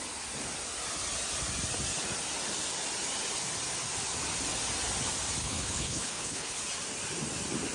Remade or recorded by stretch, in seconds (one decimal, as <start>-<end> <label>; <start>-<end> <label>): 0.0-5.4 recorded; 5.4-6.6 remade; 6.6-7.7 recorded